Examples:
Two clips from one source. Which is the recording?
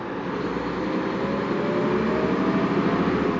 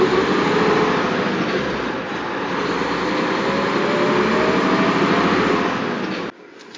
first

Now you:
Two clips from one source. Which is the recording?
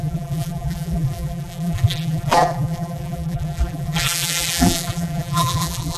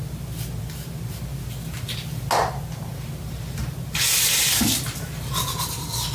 second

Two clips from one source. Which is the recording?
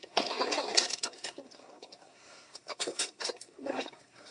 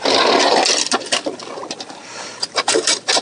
second